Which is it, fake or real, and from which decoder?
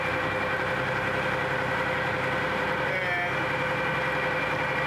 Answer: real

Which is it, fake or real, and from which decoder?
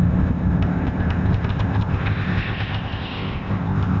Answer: fake, codec, ZipCodec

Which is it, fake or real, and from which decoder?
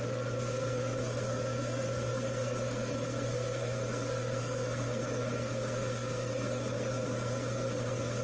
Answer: fake, codec, SNAC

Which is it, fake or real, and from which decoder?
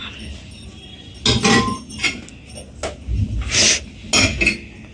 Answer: real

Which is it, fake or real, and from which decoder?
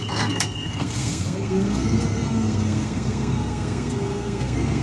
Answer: fake, codec, SNAC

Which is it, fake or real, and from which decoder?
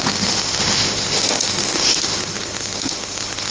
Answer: fake, autoencoder, DAC-VAE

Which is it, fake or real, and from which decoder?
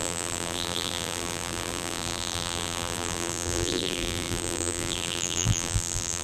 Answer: fake, vocoder, BigVGAN v2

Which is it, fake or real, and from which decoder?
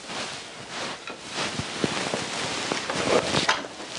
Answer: real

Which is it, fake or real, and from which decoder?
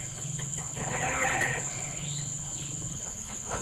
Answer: fake, codec, HILCodec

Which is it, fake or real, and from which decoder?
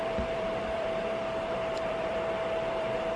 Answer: fake, vocoder, BigVGAN v2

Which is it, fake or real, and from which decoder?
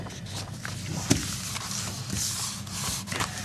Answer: real